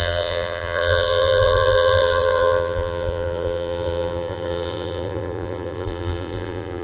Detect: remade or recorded remade